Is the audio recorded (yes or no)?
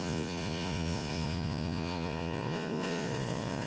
no